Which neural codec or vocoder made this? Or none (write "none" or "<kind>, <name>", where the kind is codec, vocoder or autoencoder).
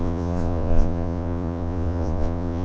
vocoder, Vocos